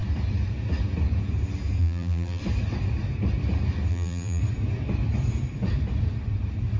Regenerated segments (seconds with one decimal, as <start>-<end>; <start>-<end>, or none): 1.8-2.4; 3.9-4.4